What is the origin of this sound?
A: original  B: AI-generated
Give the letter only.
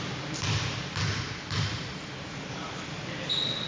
A